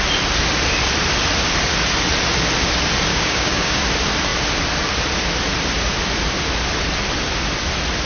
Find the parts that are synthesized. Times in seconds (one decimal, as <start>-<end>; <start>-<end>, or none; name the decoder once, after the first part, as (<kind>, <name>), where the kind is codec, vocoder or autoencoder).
3.1-3.8 (codec, DAC)